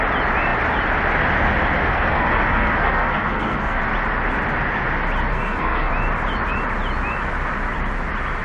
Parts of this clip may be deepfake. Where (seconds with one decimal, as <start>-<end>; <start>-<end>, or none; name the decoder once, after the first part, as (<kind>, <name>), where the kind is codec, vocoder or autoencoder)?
1.9-3.8 (codec, SNAC); 5.3-5.9